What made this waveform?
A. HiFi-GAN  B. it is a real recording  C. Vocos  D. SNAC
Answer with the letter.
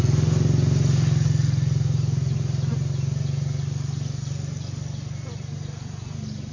B